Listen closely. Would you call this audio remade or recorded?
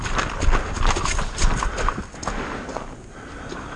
recorded